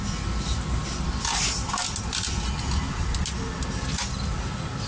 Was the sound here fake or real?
real